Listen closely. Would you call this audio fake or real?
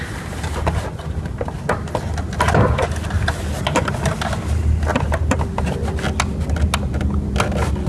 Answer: real